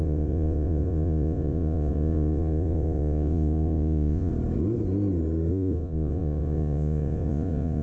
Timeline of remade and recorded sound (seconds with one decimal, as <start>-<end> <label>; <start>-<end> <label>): 0.0-4.3 remade; 4.3-5.5 recorded; 5.5-7.8 remade